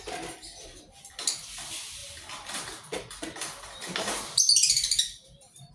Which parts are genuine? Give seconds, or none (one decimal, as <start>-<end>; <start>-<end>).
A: 0.0-5.7